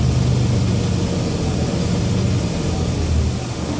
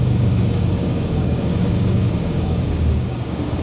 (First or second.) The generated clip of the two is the second